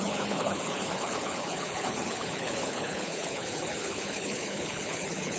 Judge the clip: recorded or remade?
remade